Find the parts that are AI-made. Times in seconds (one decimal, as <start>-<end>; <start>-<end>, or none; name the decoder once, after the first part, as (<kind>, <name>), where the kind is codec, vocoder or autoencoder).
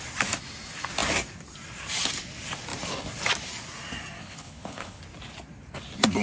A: 4.2-5.0 (codec, HILCodec)